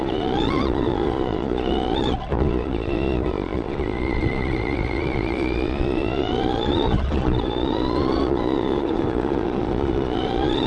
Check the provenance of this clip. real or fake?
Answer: fake